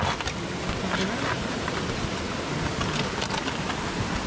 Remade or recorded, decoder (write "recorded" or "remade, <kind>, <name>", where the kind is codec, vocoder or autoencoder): recorded